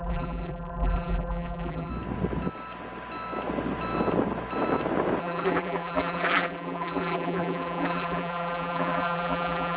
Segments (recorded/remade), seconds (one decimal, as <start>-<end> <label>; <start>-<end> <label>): 0.0-1.9 remade; 1.9-5.2 recorded; 5.2-9.8 remade